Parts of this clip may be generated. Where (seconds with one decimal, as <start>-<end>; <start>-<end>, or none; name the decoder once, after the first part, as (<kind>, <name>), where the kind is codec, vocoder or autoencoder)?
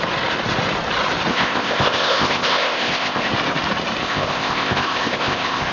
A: 1.3-3.3 (codec, ZipCodec); 4.0-5.7